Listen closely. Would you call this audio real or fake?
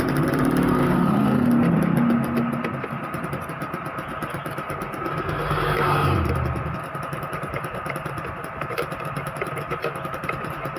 real